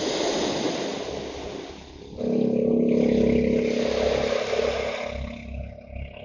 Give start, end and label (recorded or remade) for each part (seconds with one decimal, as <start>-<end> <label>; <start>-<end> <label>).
0.0-6.2 recorded

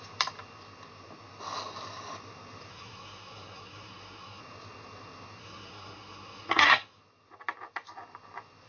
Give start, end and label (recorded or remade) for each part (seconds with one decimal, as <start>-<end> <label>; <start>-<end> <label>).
0.0-2.7 recorded; 2.7-4.4 remade; 4.4-5.4 recorded; 5.4-7.0 remade; 7.0-8.7 recorded

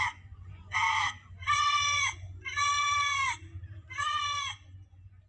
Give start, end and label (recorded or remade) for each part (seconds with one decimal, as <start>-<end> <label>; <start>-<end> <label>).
0.0-3.5 remade; 3.5-4.0 recorded; 4.0-5.3 remade